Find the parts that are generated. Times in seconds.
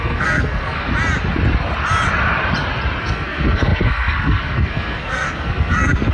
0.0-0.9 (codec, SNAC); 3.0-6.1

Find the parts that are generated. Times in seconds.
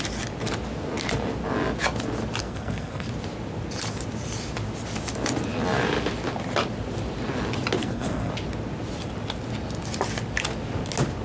2.4-3.1 (codec, SNAC); 7.8-8.3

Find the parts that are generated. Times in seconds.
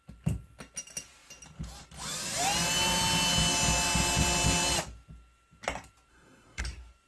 6.1-6.6 (codec, SNAC)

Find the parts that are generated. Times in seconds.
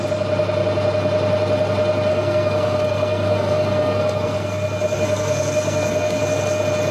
2.1-6.2 (codec, SNAC)